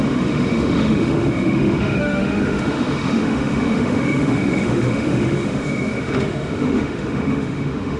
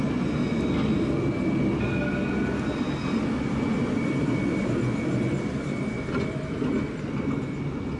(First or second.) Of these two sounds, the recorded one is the second